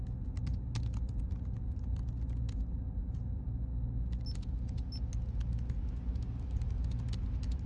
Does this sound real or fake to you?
real